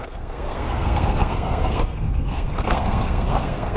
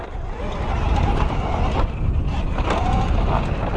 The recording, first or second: second